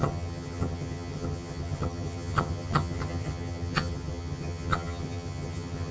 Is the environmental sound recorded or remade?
remade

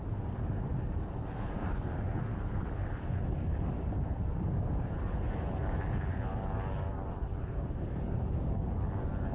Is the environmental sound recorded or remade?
remade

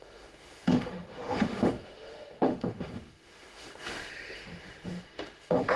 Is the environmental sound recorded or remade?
remade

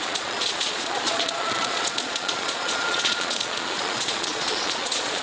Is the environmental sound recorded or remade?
remade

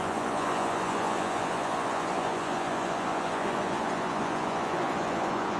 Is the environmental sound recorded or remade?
remade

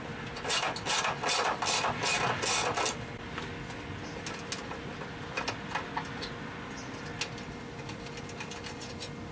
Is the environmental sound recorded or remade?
recorded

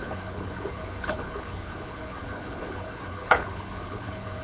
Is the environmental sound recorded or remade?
remade